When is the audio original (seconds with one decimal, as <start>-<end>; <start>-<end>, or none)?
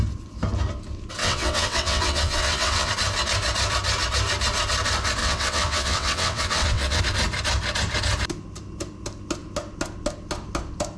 0.0-1.2; 2.9-5.2; 7.0-11.0